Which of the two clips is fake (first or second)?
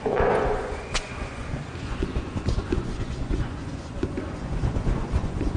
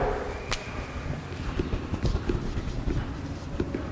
first